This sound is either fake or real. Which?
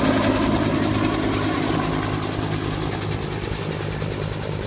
real